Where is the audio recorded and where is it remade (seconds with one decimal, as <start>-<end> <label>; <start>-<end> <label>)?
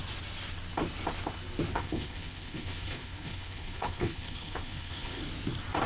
0.0-1.7 recorded; 1.7-5.2 remade; 5.2-5.9 recorded